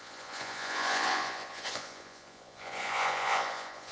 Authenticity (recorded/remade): remade